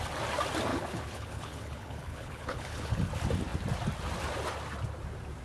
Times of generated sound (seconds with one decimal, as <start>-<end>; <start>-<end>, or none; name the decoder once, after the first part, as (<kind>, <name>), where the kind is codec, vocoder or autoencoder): 0.7-3.1 (codec, HILCodec)